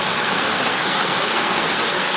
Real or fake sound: fake